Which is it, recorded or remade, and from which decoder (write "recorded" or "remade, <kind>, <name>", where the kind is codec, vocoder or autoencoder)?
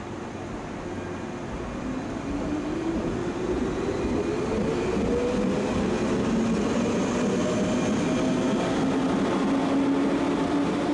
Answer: recorded